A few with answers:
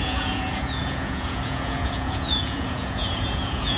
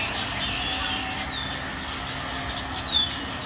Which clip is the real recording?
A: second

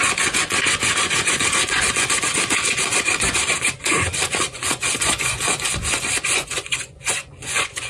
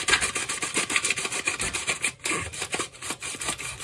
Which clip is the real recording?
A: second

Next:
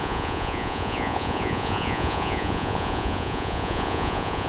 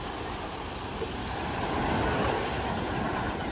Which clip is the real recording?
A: second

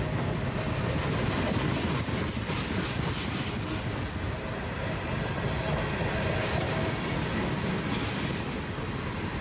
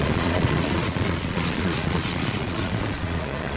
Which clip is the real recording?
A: first